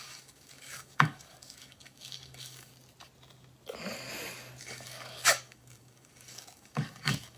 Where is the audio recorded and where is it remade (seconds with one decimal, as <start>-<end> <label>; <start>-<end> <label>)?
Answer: 0.0-2.7 remade; 2.7-4.6 recorded; 4.6-7.4 remade